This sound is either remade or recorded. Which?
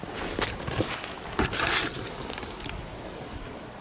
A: remade